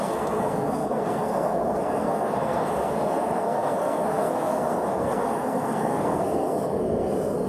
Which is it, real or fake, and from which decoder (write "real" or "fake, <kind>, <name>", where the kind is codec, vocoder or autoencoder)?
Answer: fake, codec, SNAC